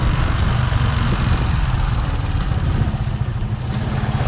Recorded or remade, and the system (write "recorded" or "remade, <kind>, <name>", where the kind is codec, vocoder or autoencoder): recorded